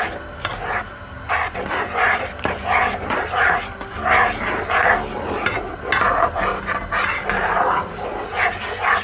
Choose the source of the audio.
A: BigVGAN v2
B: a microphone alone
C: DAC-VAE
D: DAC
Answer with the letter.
B